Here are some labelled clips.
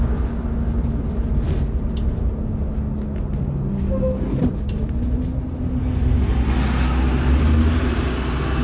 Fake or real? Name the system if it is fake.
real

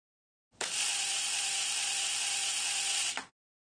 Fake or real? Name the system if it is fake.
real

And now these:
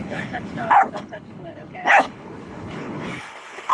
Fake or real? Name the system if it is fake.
fake, codec, HILCodec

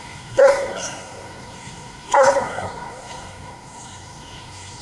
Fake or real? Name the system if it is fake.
fake, codec, SNAC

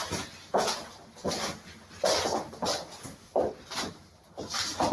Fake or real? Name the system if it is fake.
real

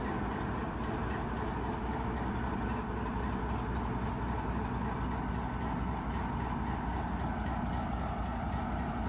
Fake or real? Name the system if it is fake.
real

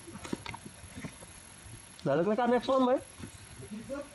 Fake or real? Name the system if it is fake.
fake, vocoder, WaveNeXt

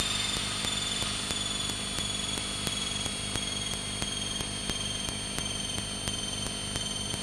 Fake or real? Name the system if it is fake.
real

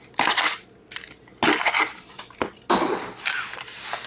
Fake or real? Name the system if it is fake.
real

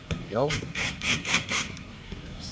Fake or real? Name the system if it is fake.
fake, codec, SNAC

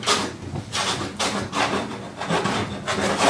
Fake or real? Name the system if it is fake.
real